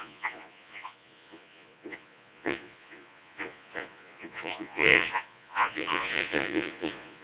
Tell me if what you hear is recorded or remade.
remade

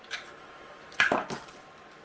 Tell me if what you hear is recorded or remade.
recorded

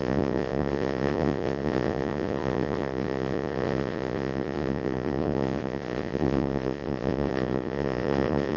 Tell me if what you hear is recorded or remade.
remade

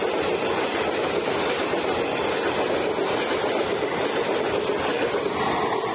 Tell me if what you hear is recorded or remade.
recorded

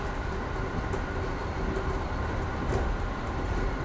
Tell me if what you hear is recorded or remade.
recorded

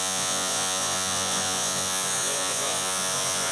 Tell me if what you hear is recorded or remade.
remade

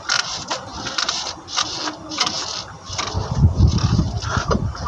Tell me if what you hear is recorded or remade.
recorded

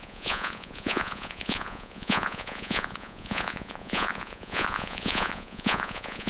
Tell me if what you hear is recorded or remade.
remade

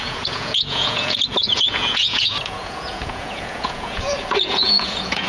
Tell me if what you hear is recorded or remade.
remade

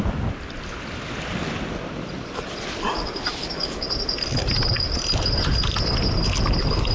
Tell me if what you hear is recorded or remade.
recorded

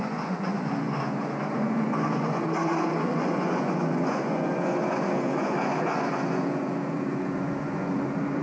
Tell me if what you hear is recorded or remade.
remade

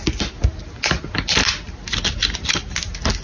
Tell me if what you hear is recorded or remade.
recorded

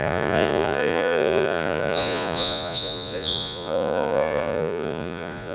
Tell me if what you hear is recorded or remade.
remade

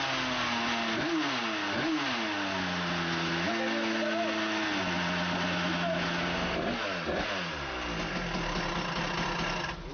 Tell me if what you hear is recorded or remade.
recorded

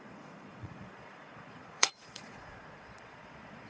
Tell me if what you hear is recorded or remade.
remade